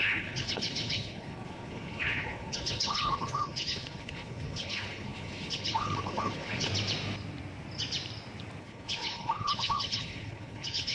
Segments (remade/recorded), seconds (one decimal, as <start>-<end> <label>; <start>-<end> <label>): 0.0-6.7 remade; 6.7-8.6 recorded; 8.6-10.9 remade